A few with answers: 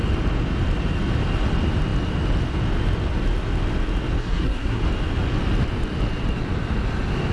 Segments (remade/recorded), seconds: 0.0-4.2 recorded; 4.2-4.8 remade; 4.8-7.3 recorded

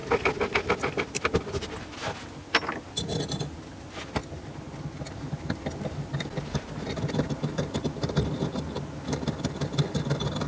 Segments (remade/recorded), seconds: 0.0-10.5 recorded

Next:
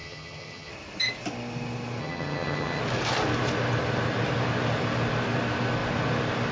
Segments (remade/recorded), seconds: 0.0-0.7 remade; 0.7-2.0 recorded; 2.0-2.8 remade; 2.8-6.5 recorded

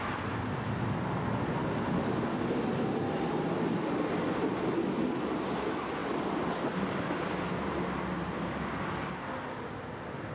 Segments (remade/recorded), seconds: 0.0-10.3 recorded

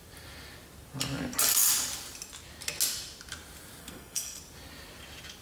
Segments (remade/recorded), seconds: 0.0-3.8 recorded; 3.8-4.4 remade; 4.4-5.4 recorded